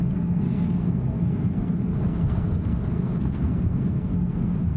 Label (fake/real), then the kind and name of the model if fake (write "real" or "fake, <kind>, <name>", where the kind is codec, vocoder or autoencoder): fake, codec, SNAC